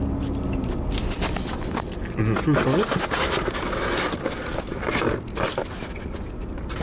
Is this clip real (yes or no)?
yes